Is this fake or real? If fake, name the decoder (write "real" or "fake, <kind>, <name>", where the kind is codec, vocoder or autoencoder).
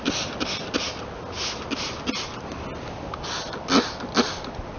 real